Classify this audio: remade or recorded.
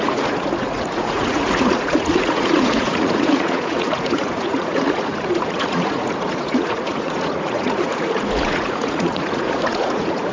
remade